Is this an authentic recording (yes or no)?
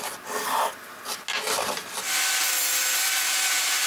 yes